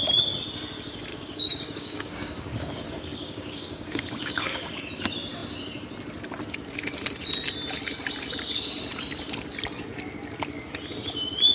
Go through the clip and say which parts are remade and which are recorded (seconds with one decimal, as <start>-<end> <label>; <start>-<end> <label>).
0.0-1.1 recorded; 1.1-4.8 remade; 4.8-11.5 recorded